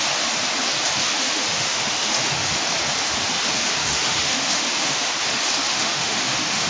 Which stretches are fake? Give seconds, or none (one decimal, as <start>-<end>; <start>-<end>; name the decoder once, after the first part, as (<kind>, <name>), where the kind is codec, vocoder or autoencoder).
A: 1.0-2.6 (autoencoder, DAC-VAE); 3.8-5.1; 5.7-6.7